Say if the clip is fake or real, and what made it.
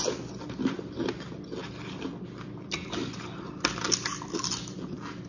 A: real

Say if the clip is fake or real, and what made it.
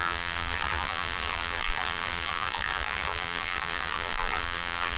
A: fake, vocoder, BigVGAN v2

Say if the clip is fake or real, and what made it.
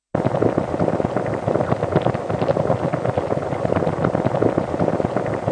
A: real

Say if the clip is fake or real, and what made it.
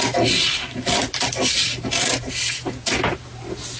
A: real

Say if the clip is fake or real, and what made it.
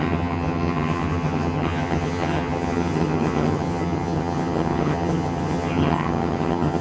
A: fake, vocoder, HiFi-GAN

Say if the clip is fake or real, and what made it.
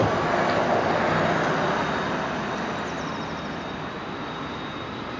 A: real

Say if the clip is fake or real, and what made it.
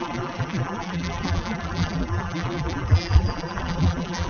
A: fake, vocoder, BigVGAN v2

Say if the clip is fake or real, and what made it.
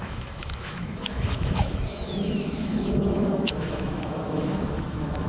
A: fake, autoencoder, DAC-VAE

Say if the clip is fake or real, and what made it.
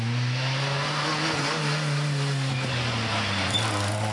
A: real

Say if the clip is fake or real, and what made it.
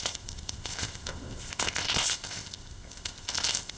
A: fake, codec, ZipCodec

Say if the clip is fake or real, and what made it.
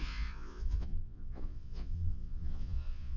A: fake, vocoder, Vocos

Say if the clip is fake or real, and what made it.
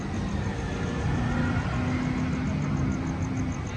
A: real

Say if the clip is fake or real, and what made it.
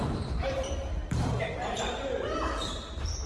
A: fake, vocoder, BigVGAN v2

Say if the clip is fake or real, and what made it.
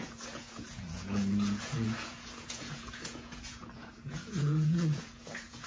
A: fake, vocoder, Vocos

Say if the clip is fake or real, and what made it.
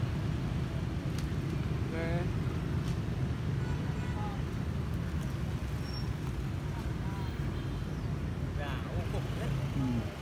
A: real